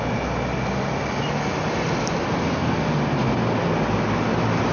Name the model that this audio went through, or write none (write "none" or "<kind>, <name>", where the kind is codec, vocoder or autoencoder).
none